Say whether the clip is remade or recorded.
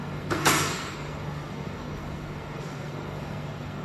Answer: remade